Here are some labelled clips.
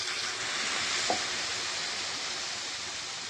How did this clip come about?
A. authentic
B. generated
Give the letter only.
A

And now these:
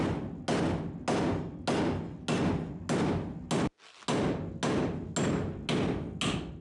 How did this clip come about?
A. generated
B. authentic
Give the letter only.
B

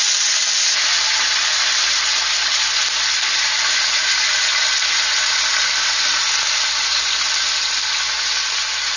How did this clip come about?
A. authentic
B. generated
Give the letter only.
A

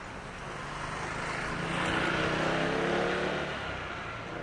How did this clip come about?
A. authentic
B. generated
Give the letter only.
A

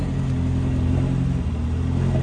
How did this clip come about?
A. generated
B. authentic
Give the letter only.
B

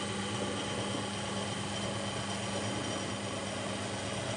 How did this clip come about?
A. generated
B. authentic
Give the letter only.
B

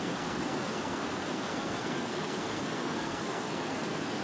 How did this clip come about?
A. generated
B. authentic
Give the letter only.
A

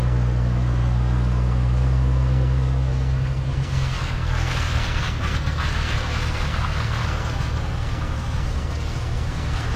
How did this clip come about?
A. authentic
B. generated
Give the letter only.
B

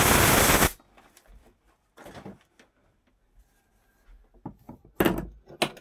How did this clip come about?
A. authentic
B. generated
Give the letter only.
A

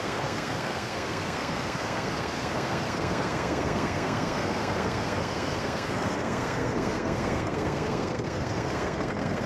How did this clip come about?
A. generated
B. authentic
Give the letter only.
A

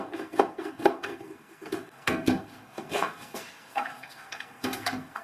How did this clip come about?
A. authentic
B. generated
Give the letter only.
B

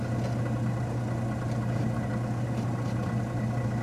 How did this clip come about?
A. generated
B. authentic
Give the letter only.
B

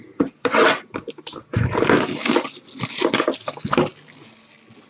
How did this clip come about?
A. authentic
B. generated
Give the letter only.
A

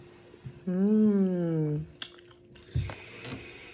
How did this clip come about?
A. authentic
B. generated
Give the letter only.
A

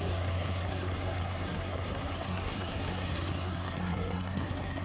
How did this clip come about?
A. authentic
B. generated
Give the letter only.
B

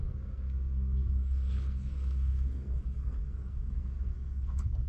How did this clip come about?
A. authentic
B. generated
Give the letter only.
B